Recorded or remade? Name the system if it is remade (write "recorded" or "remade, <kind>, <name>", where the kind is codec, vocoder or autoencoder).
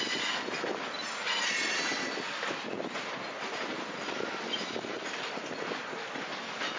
recorded